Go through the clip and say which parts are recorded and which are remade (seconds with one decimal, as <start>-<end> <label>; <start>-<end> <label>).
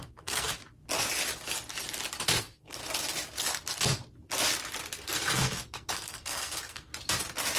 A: 0.0-0.6 remade; 0.6-2.4 recorded; 2.4-2.8 remade; 2.8-5.0 recorded; 5.0-6.9 remade; 6.9-7.6 recorded